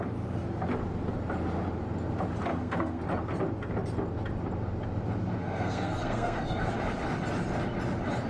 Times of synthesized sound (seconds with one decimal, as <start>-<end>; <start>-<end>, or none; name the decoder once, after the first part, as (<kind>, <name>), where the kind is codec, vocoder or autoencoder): 2.5-3.0 (codec, SNAC); 5.4-6.7